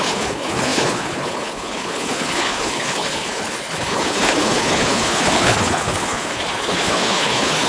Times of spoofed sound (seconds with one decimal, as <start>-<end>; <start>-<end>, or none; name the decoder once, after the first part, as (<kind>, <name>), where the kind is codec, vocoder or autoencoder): 0.0-7.7 (codec, HILCodec)